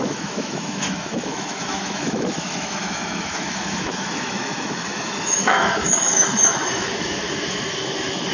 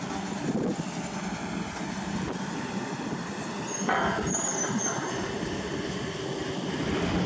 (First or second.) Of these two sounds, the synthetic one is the first